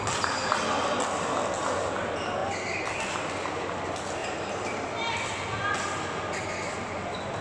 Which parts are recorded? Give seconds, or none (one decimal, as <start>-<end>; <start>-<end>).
0.0-4.2; 4.8-7.4